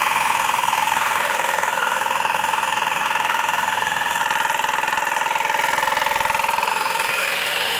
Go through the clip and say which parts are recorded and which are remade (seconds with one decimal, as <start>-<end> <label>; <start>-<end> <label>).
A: 0.0-4.2 remade; 4.2-6.7 recorded; 6.7-7.8 remade